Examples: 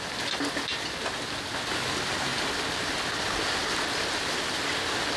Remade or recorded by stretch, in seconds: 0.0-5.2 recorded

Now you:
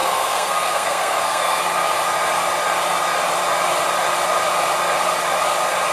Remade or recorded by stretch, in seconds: 0.0-1.6 remade; 1.6-5.9 recorded

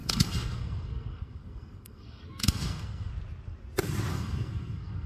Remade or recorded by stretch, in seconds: 0.0-3.1 remade; 3.1-4.1 recorded; 4.1-5.1 remade

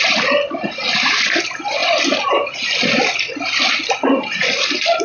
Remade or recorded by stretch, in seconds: 0.0-5.0 recorded

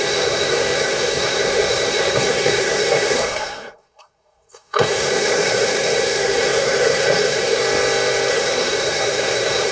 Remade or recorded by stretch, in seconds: 0.0-7.6 remade; 7.6-8.3 recorded; 8.3-9.7 remade

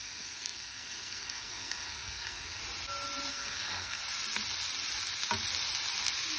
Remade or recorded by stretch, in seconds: 0.0-2.6 remade; 2.6-3.3 recorded; 3.3-4.0 remade; 4.0-6.4 recorded